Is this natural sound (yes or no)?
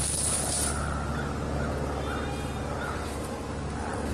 yes